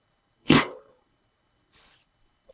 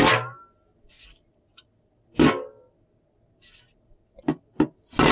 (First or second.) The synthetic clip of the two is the first